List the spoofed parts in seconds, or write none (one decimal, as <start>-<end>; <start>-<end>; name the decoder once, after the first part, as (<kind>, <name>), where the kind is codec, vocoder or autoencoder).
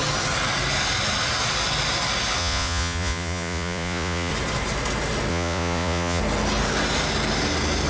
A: 2.4-4.3 (vocoder, Vocos); 5.3-6.2